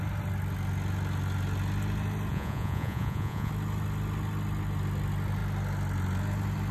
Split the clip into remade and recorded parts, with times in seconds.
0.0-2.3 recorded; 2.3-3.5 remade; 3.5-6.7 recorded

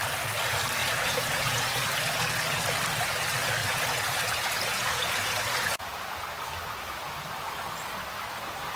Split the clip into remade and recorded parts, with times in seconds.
0.0-0.8 recorded; 0.8-1.8 remade; 1.8-3.6 recorded; 3.6-6.2 remade; 6.2-8.8 recorded

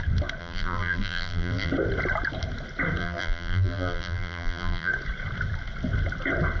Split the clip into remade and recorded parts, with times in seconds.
0.0-0.4 recorded; 0.4-1.7 remade; 1.7-3.0 recorded; 3.0-4.9 remade; 4.9-6.6 recorded

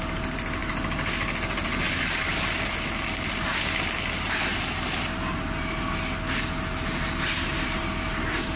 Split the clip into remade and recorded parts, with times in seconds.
0.0-8.6 recorded